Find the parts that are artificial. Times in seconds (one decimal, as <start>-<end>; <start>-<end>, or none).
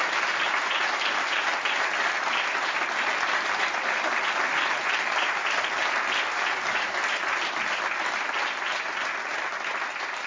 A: none